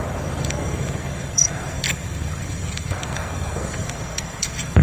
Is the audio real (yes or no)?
no